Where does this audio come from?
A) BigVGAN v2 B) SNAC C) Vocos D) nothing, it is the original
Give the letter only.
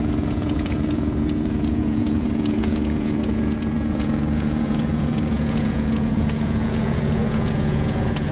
C